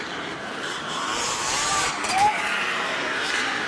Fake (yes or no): yes